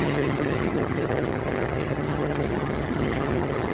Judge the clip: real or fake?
fake